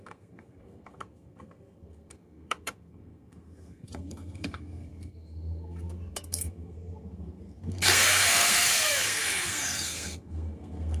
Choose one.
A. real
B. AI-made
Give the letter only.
B